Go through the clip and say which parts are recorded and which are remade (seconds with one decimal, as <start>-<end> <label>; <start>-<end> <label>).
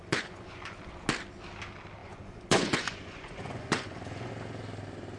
0.0-0.6 remade; 0.6-2.0 recorded; 2.0-4.3 remade; 4.3-5.2 recorded